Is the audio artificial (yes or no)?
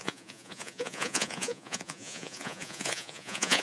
yes